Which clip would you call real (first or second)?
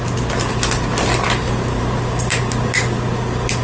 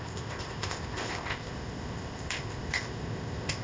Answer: first